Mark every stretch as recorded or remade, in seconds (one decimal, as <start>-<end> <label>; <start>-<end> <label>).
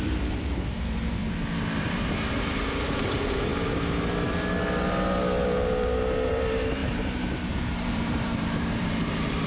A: 0.0-1.2 remade; 1.2-1.8 recorded; 1.8-3.5 remade; 3.5-5.1 recorded; 5.1-9.5 remade